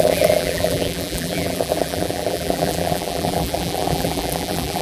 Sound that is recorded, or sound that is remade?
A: remade